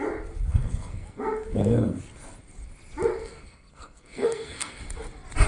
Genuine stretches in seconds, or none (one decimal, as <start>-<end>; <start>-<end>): 0.0-0.5; 2.0-3.1; 4.8-5.5